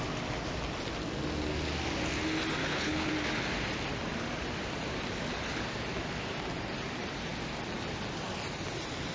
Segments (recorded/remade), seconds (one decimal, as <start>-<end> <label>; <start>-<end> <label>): 0.0-2.6 recorded; 2.6-3.1 remade; 3.1-9.1 recorded